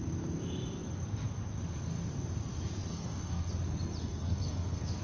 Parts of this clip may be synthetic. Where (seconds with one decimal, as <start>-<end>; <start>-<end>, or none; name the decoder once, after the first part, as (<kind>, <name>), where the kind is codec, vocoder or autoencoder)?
2.9-3.5 (codec, SNAC); 4.0-5.0